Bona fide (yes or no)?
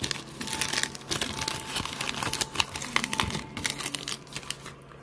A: yes